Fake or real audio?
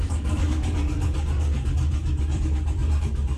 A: fake